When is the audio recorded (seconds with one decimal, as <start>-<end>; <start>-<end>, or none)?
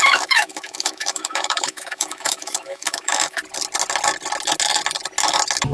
3.4-5.7